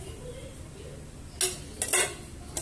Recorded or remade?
recorded